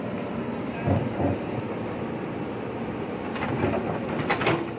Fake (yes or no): no